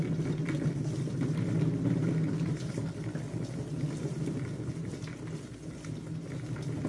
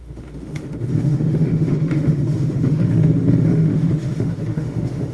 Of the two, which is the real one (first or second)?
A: first